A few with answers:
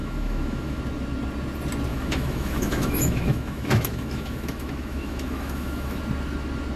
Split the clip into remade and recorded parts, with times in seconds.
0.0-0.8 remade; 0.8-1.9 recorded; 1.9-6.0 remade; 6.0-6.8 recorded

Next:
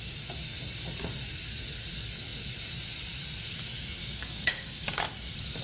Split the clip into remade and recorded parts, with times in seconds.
0.0-4.0 recorded; 4.0-5.0 remade; 5.0-5.6 recorded

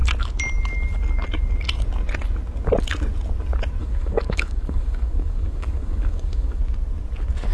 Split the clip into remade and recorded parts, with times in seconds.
0.0-3.8 recorded; 3.8-6.6 remade; 6.6-7.5 recorded

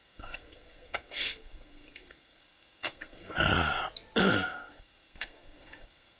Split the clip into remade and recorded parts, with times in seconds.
0.0-3.5 remade; 3.5-4.3 recorded; 4.3-6.2 remade